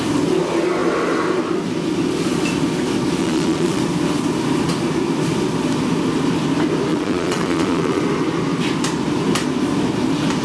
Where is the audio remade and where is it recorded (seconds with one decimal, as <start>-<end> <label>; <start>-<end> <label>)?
0.0-3.2 recorded; 3.2-3.8 remade; 3.8-6.9 recorded; 6.9-8.0 remade; 8.0-10.4 recorded